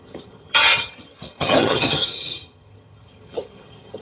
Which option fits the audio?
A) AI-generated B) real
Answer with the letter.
A